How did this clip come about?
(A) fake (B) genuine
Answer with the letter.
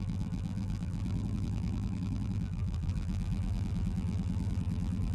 A